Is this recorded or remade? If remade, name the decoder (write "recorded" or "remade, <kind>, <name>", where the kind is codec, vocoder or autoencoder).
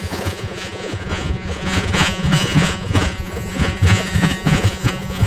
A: remade, vocoder, Vocos